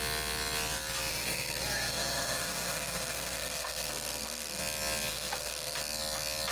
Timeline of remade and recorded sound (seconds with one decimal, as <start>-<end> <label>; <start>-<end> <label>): 0.0-1.1 recorded; 1.1-4.6 remade; 4.6-5.1 recorded; 5.1-5.8 remade; 5.8-6.5 recorded